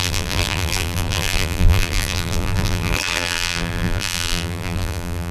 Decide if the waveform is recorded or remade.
remade